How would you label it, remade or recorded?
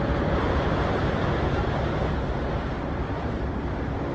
recorded